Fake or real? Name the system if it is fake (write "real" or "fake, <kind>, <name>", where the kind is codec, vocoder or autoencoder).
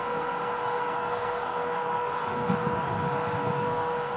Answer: fake, codec, SNAC